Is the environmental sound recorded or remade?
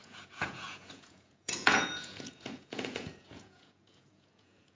remade